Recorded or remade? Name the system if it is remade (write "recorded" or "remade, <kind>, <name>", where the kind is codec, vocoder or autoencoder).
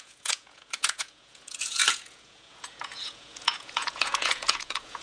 remade, vocoder, Vocos